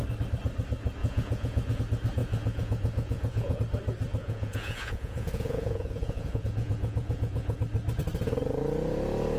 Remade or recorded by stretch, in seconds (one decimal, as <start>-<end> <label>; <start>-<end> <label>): 0.0-1.0 recorded; 1.0-1.8 remade; 1.8-2.2 recorded; 2.2-3.6 remade; 3.6-4.2 recorded; 4.2-7.6 remade; 7.6-9.4 recorded